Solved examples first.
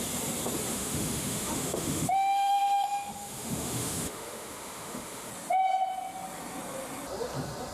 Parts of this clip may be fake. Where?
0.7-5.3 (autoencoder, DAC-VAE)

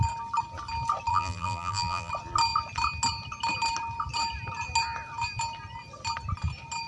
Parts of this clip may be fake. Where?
1.1-2.1 (vocoder, BigVGAN v2)

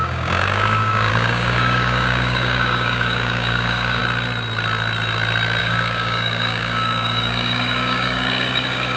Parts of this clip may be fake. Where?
0.0-4.0 (codec, DAC); 5.6-9.0

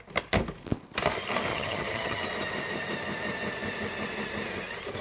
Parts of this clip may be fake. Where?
1.5-2.2 (vocoder, HiFi-GAN)

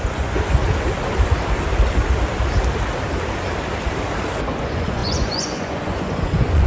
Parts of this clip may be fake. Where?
0.0-0.6 (vocoder, Vocos); 4.6-6.7

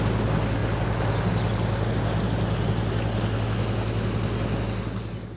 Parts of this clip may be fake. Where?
none

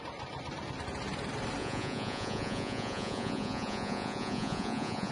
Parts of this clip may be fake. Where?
1.6-5.1 (vocoder, Vocos)

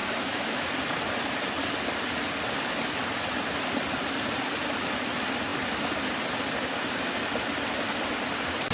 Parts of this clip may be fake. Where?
0.0-0.7 (autoencoder, DAC-VAE)